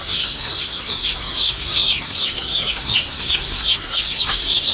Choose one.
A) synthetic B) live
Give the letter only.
A